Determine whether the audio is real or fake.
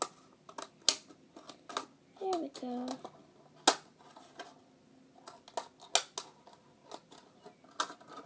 real